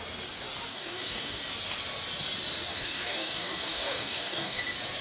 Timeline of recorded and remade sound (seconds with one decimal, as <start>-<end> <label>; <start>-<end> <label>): 0.0-0.7 recorded; 0.7-1.4 remade; 1.4-2.7 recorded; 2.7-4.6 remade; 4.6-5.0 recorded